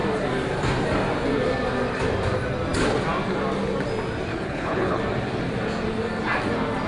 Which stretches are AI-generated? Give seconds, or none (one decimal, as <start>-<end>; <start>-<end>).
4.3-5.0